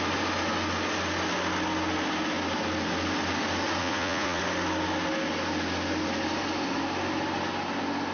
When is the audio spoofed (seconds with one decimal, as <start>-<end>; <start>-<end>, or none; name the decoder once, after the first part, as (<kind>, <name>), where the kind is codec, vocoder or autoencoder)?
3.8-4.4 (vocoder, Vocos)